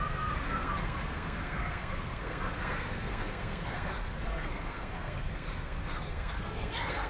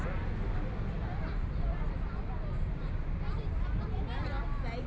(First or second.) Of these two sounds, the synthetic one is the first